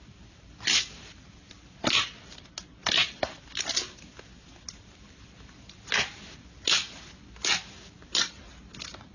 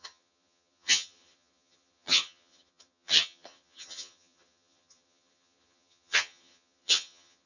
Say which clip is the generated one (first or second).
second